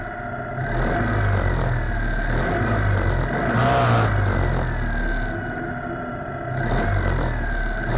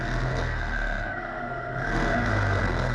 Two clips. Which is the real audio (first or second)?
first